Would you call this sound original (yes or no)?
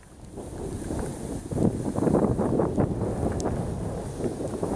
yes